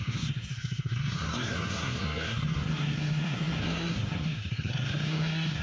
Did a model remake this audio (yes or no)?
yes